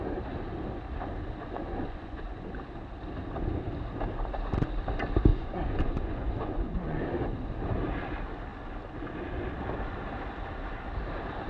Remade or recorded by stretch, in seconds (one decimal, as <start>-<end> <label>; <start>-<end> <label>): 0.0-1.4 recorded; 1.4-2.5 remade; 2.5-5.3 recorded; 5.3-7.0 remade; 7.0-11.5 recorded